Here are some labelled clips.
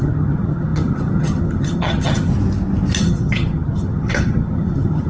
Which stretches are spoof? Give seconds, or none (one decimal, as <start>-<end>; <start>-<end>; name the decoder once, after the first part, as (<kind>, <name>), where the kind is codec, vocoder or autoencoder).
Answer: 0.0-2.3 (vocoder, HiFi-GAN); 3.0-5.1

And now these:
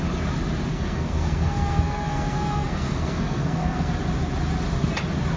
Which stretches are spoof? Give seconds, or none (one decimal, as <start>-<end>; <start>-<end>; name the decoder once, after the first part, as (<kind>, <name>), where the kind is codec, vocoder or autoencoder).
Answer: 0.7-3.9 (codec, SNAC)

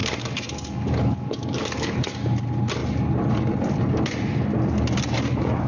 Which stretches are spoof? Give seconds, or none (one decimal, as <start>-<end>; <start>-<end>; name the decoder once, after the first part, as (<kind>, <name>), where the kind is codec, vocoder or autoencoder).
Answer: 0.0-2.0 (codec, DAC)

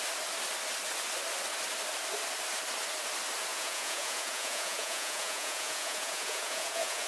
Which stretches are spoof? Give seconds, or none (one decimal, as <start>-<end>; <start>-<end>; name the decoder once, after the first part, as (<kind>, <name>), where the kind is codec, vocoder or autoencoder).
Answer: 3.5-7.1 (vocoder, Vocos)

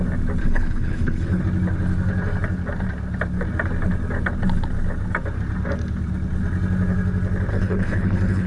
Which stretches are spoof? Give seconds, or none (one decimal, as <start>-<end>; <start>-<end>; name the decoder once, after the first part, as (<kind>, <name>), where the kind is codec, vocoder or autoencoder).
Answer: 0.4-1.4 (codec, HILCodec); 7.5-8.5

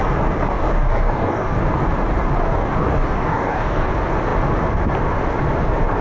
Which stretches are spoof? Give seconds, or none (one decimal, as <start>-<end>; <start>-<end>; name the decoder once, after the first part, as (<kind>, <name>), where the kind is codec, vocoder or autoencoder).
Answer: 0.5-1.6 (codec, DAC); 2.4-3.9

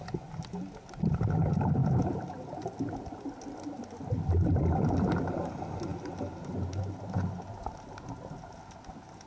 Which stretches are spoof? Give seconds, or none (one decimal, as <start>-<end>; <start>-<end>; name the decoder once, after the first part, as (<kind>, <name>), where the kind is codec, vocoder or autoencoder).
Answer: none